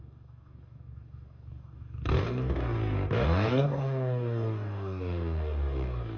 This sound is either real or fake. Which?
fake